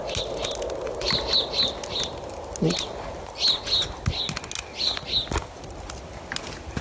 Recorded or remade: recorded